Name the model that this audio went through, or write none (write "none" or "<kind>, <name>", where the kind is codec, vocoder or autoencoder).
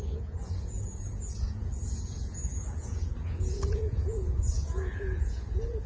vocoder, Vocos